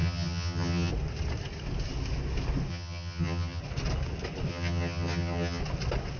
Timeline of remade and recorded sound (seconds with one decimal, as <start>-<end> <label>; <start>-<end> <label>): 0.0-0.9 remade; 0.9-2.7 recorded; 2.7-3.6 remade; 3.6-4.5 recorded; 4.5-5.6 remade; 5.6-6.2 recorded